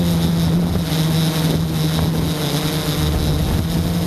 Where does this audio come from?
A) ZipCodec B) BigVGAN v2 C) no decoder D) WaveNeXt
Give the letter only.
C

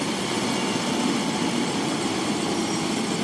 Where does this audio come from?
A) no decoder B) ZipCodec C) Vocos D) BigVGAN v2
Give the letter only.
A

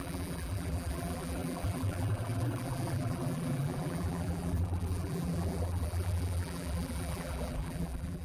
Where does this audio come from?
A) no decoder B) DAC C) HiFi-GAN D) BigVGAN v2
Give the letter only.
D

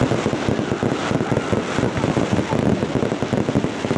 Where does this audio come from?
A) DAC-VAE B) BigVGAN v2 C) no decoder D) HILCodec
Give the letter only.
C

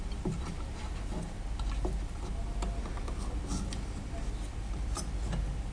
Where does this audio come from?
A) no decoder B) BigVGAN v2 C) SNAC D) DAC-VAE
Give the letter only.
A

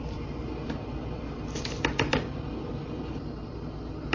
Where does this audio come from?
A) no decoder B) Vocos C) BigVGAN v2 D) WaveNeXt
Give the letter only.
A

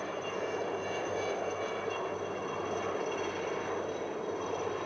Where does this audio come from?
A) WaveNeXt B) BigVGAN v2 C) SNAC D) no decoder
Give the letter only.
D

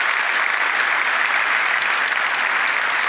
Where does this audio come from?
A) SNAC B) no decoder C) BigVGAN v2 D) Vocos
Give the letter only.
B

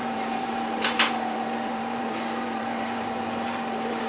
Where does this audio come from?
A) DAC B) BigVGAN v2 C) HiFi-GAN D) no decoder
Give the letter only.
B